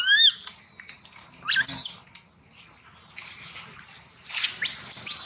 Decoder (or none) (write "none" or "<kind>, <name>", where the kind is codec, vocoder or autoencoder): none